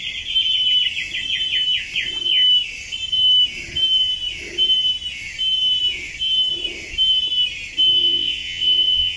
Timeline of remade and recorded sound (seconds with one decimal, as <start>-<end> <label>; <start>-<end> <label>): 0.0-8.0 recorded; 8.0-9.2 remade